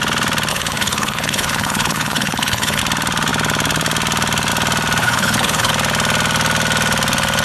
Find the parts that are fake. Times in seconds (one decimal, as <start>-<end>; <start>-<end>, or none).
0.5-2.8; 5.0-5.7